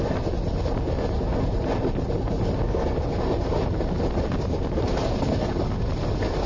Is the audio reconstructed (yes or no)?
no